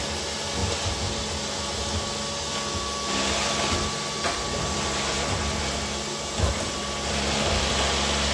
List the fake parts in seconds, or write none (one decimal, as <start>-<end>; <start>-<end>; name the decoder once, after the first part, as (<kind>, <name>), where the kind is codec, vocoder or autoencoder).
none

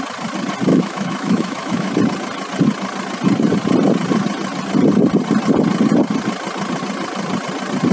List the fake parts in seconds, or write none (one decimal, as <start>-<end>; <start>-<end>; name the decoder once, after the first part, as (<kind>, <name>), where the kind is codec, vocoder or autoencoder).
0.7-1.9 (autoencoder, DAC-VAE)

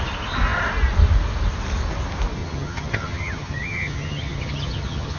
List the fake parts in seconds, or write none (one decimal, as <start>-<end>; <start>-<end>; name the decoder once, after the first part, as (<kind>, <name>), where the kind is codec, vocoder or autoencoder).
2.4-5.2 (vocoder, HiFi-GAN)

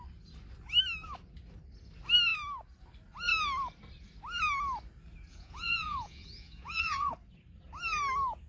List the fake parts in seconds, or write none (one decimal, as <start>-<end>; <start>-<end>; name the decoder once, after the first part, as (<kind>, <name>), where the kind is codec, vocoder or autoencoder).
5.3-7.1 (vocoder, Vocos)

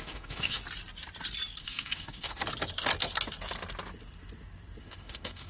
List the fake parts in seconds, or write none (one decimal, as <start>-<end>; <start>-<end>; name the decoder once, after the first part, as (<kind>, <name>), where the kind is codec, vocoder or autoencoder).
0.0-0.6 (autoencoder, DAC-VAE); 1.6-2.4; 4.8-5.5

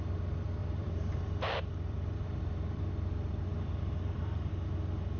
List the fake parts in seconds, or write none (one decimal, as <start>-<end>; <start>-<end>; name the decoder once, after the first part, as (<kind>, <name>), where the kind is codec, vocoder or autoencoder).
0.6-2.9 (vocoder, BigVGAN v2); 3.5-4.5

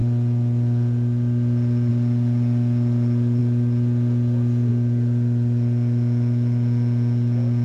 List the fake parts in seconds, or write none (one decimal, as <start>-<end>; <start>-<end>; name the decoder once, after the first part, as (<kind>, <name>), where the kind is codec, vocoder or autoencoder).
none